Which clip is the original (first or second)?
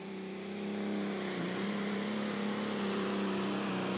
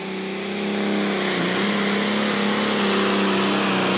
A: second